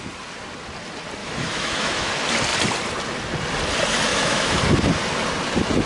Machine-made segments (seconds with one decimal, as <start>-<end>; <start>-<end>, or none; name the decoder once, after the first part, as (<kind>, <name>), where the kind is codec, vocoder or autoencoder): 1.2-2.1 (autoencoder, DAC-VAE); 4.1-4.6